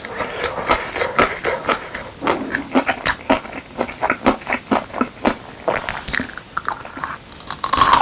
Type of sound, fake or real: real